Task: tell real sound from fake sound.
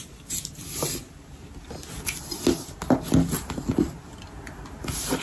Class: real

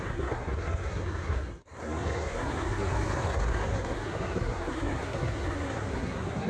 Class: fake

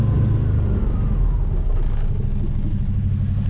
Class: real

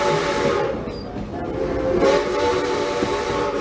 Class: real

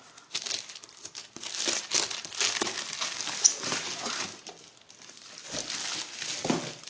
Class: real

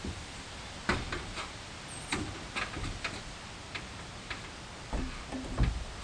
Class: real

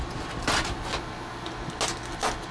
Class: real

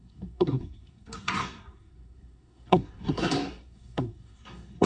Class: fake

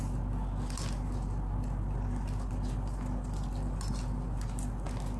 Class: real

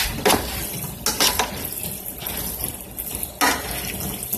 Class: real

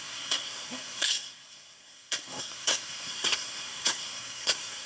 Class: fake